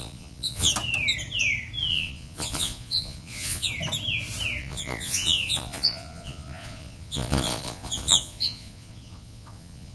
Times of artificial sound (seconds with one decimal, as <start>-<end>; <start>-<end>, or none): 0.0-0.7; 1.9-3.7; 4.6-9.9